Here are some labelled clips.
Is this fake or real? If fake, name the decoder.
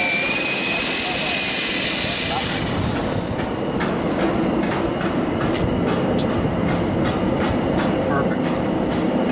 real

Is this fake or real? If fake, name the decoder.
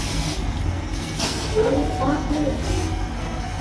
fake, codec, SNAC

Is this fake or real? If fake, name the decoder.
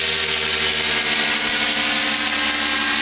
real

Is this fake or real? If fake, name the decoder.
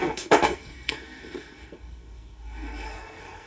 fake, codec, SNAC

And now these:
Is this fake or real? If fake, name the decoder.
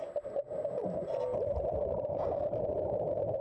real